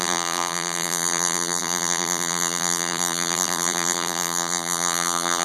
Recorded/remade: remade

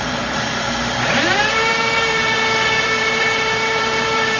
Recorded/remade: remade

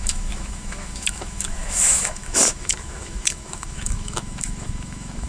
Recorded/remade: remade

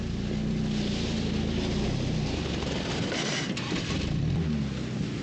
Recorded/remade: recorded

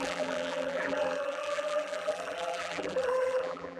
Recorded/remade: remade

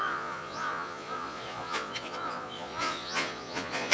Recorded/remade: remade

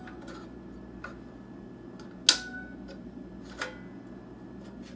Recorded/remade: recorded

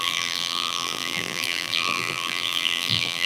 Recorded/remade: remade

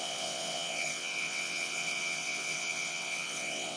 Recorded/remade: remade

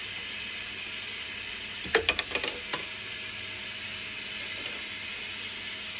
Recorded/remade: recorded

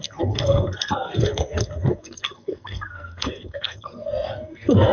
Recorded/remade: remade